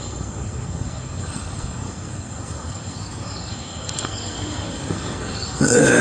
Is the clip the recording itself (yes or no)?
no